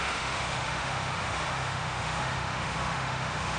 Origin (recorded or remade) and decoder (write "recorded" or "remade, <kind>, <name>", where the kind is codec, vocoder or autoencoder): remade, autoencoder, DAC-VAE